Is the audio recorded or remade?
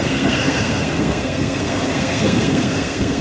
remade